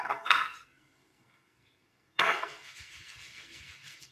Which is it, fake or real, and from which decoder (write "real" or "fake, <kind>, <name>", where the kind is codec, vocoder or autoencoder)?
fake, codec, SNAC